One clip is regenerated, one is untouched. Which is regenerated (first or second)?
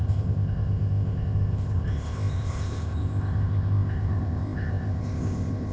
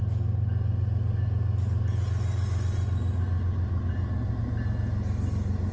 first